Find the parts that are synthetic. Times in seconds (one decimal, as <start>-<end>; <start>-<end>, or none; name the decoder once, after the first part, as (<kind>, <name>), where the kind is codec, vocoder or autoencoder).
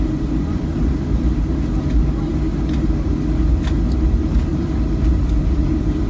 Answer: none